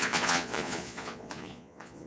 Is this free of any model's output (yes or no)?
no